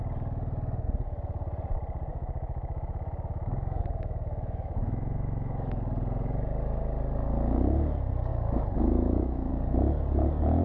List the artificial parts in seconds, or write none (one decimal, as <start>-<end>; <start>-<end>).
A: 2.1-5.8; 8.3-9.5